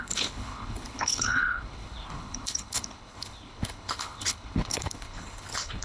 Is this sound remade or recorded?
remade